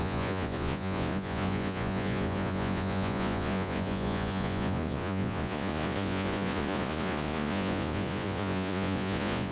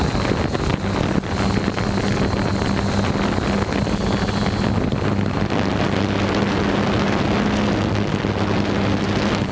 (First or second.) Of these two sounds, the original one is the second